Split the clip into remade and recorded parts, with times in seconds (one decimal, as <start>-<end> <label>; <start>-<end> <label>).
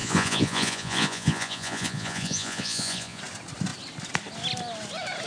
0.0-3.2 remade; 3.2-5.3 recorded